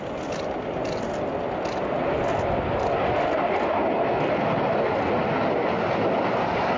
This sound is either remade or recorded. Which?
recorded